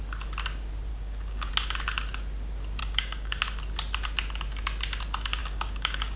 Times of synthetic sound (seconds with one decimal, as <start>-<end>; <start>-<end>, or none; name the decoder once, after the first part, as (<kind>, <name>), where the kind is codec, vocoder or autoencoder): 0.9-1.5 (codec, DAC); 2.8-3.4; 5.4-6.2